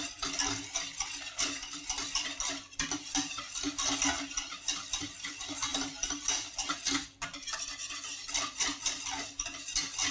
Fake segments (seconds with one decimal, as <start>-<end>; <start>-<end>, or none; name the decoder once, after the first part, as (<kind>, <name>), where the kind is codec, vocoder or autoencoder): none